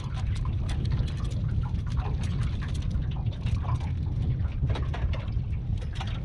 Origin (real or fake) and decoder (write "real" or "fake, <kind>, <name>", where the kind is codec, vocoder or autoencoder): real